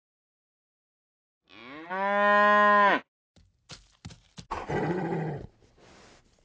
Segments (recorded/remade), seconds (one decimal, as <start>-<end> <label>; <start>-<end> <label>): 0.0-6.4 recorded